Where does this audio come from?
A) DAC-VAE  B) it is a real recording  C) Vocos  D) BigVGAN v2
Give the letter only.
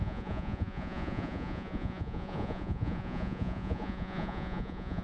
C